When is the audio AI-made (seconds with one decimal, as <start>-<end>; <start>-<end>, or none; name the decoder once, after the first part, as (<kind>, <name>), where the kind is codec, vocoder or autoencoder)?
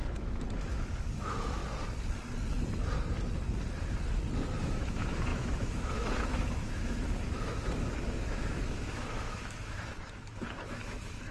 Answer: 0.0-1.6 (autoencoder, DAC-VAE); 4.6-11.3